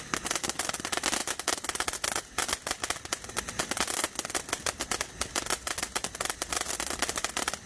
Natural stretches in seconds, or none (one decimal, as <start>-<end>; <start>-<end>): 0.0-7.7